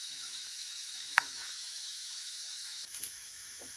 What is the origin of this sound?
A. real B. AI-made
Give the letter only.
B